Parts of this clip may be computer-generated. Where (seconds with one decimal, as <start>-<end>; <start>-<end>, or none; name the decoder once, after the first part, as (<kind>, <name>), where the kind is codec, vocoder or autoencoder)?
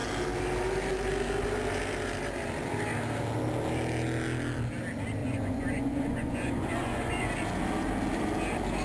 5.2-7.3 (vocoder, Vocos)